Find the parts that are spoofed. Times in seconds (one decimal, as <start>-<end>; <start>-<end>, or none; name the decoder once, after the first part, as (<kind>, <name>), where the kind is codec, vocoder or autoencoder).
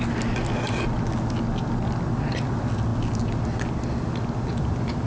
none